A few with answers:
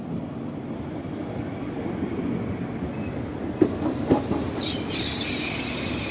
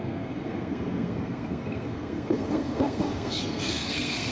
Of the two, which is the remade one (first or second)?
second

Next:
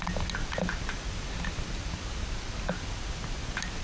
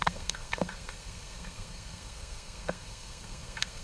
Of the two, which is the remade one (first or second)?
second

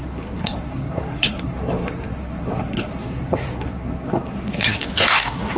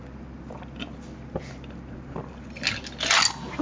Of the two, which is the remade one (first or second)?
first